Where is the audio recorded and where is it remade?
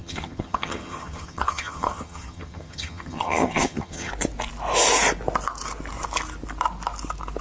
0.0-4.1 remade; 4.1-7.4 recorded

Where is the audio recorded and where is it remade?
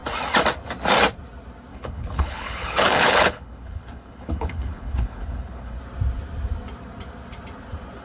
0.0-1.7 recorded; 1.7-5.8 remade; 5.8-8.0 recorded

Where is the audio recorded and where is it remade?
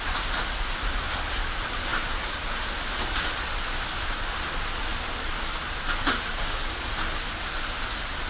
0.0-8.3 recorded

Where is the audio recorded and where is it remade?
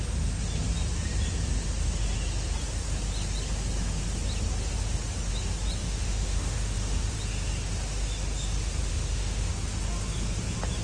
0.0-5.8 recorded; 5.8-7.1 remade; 7.1-8.9 recorded; 8.9-9.5 remade; 9.5-10.8 recorded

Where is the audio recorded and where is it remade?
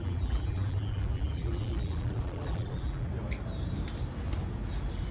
0.0-3.1 remade; 3.1-5.1 recorded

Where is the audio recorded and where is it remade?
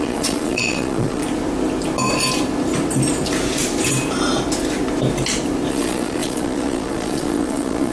0.0-1.2 remade; 1.2-5.7 recorded; 5.7-7.9 remade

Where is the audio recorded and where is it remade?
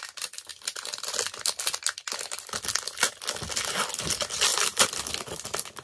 0.0-5.8 recorded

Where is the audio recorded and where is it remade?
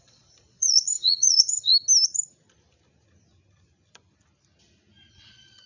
0.0-1.7 remade; 1.7-5.1 recorded; 5.1-5.7 remade